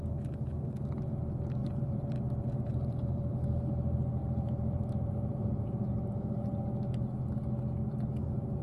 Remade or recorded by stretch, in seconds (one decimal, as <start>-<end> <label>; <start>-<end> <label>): 0.0-1.6 recorded; 1.6-3.3 remade; 3.3-4.2 recorded; 4.2-7.1 remade; 7.1-8.6 recorded